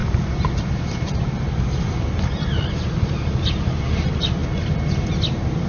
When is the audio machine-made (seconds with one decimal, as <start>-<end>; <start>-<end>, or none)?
none